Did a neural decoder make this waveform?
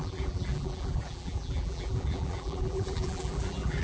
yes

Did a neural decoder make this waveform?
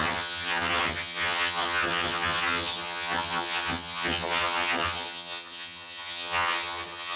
yes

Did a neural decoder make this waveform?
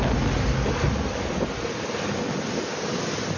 no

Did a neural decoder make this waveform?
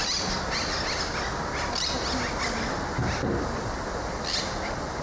no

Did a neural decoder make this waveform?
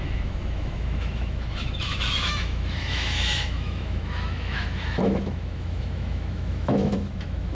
yes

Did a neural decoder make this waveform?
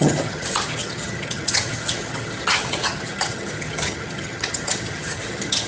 yes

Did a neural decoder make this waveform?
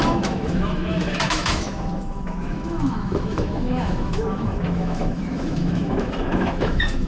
yes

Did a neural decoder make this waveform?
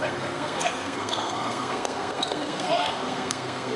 yes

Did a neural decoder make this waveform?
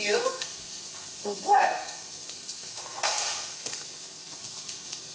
yes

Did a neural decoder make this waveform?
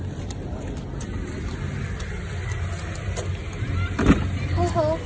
no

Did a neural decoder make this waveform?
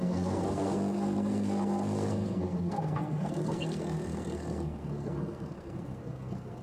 yes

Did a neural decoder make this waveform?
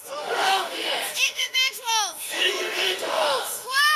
yes